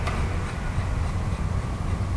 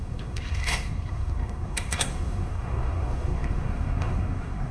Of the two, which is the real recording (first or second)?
first